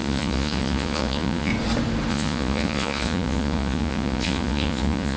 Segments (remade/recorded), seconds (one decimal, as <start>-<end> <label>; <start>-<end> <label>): 0.0-1.5 remade; 1.5-2.1 recorded; 2.1-5.2 remade